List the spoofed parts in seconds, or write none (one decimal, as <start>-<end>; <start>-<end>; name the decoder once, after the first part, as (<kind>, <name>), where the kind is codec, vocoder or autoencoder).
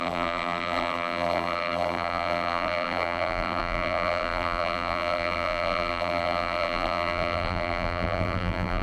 0.0-8.8 (vocoder, BigVGAN v2)